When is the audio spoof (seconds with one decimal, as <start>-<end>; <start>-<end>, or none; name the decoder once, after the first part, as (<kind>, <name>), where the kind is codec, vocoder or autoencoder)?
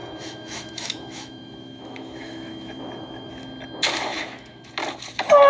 0.0-3.3 (autoencoder, DAC-VAE); 4.1-4.7